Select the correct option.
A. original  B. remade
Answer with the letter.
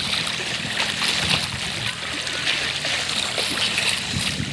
A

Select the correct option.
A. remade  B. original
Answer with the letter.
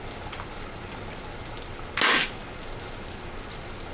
B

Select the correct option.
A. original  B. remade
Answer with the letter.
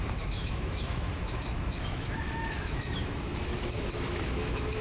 B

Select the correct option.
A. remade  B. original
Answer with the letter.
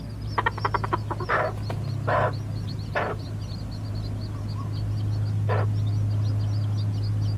B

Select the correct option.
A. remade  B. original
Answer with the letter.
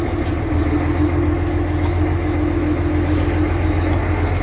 B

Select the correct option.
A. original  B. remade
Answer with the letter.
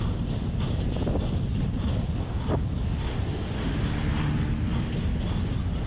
A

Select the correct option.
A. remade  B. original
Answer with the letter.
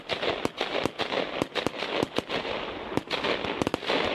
B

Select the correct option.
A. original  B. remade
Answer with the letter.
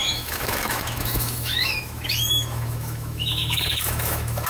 B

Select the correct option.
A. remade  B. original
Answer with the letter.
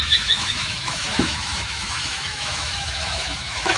A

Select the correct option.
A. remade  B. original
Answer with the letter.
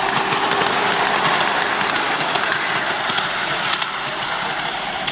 B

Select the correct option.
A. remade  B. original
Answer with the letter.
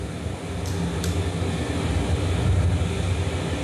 B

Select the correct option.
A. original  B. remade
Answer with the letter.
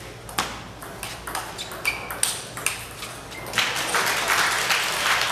A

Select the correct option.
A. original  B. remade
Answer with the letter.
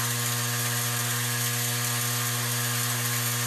A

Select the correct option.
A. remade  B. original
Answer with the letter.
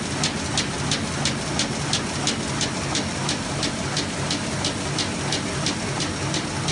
B